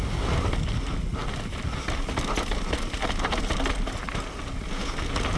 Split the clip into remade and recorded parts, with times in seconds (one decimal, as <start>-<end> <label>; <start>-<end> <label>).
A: 0.0-5.4 recorded